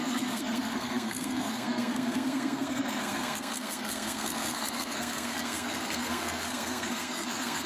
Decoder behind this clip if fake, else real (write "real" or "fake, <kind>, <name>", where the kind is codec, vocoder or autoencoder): fake, codec, SNAC